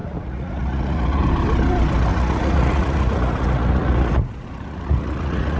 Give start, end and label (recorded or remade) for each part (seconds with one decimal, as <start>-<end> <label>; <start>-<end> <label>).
0.0-1.2 remade; 1.2-2.1 recorded; 2.1-5.6 remade

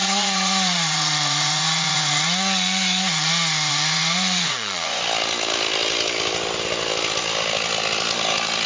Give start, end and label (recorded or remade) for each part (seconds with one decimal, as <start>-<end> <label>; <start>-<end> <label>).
0.0-3.3 remade; 3.3-3.7 recorded; 3.7-5.0 remade; 5.0-8.7 recorded

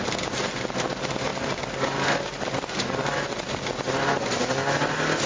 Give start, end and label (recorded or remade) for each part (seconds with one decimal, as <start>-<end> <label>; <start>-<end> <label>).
0.0-5.3 recorded

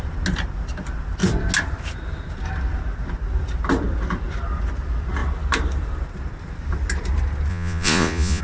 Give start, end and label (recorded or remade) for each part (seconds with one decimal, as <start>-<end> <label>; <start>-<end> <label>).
0.0-7.5 recorded; 7.5-8.4 remade

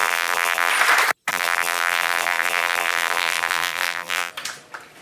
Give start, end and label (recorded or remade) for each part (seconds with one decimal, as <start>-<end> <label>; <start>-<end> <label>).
0.0-0.7 remade; 0.7-1.3 recorded; 1.3-4.3 remade; 4.3-5.0 recorded

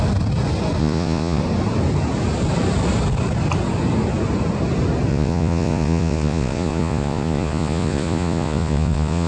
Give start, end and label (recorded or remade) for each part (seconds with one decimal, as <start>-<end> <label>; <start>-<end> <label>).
0.0-0.8 recorded; 0.8-1.4 remade; 1.4-5.1 recorded; 5.1-9.3 remade